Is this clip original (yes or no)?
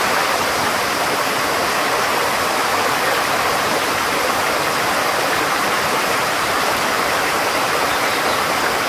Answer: yes